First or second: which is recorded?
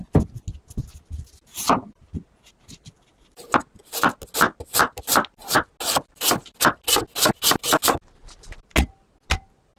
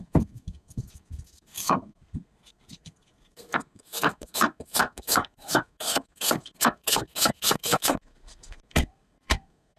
first